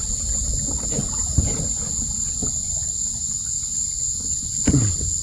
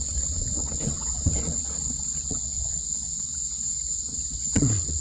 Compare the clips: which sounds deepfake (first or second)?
second